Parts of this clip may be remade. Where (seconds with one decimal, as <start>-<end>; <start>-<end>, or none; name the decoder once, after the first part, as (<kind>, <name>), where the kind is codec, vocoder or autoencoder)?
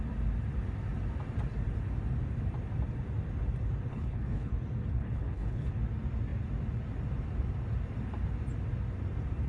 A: 3.9-4.5 (codec, HILCodec); 5.0-5.7